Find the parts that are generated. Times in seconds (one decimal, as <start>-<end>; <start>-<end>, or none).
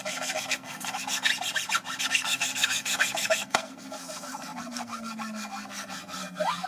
0.0-1.3; 2.0-6.7